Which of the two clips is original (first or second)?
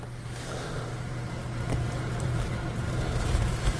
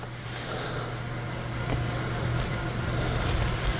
second